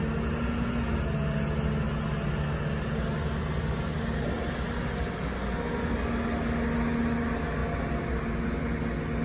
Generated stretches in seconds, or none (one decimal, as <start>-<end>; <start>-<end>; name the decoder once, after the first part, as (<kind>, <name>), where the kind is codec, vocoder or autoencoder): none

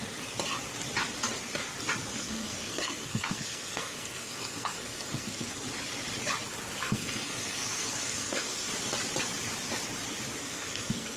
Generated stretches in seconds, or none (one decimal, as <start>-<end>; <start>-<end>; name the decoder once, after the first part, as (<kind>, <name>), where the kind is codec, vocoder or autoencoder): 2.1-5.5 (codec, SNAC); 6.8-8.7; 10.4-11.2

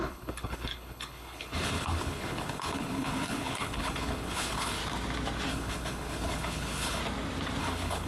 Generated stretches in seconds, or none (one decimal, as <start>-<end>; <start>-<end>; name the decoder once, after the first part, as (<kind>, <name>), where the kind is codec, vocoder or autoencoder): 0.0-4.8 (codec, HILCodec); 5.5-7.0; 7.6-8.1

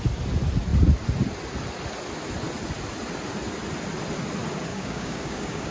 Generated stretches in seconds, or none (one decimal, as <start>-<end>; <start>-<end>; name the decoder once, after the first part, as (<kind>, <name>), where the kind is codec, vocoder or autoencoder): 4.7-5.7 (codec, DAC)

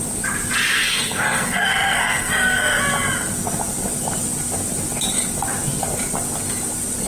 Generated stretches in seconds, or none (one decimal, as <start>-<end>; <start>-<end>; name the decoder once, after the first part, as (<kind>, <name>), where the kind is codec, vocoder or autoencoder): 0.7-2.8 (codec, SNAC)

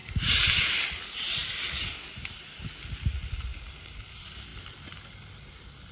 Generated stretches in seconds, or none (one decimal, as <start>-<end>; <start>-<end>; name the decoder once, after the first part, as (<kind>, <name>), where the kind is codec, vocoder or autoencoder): 0.0-0.6 (vocoder, BigVGAN v2)

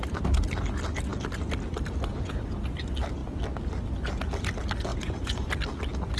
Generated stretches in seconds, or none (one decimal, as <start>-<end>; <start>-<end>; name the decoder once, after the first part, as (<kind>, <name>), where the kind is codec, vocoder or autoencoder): 4.9-5.5 (vocoder, Vocos)

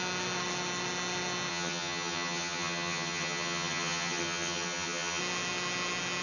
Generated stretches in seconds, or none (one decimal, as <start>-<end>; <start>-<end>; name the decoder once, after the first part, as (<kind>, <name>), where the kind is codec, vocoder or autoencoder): 1.5-5.2 (vocoder, HiFi-GAN)